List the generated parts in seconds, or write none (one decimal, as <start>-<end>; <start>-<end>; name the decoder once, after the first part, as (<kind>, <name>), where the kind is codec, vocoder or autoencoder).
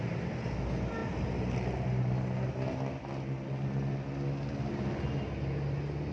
none